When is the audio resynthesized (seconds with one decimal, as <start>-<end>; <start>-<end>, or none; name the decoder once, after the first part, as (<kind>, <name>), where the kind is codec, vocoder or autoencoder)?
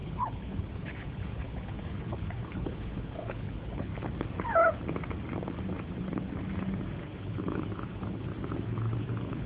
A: 0.0-3.9 (codec, HILCodec); 7.0-8.3; 9.0-9.5